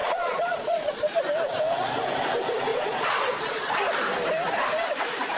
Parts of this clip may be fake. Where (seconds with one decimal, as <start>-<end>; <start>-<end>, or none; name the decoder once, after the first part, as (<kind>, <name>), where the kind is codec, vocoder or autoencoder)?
0.0-1.2 (vocoder, Vocos); 2.7-3.7